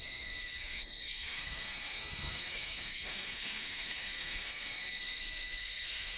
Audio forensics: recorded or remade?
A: remade